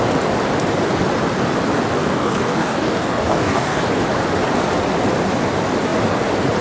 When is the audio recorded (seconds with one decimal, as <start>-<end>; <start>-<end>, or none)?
0.0-2.0; 3.9-6.6